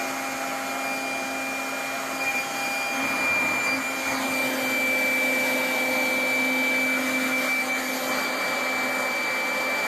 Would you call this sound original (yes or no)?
yes